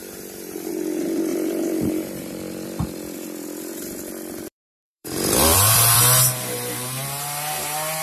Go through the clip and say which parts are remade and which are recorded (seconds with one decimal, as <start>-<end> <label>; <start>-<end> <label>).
0.0-0.7 remade; 0.7-1.3 recorded; 1.3-6.0 remade; 6.0-8.0 recorded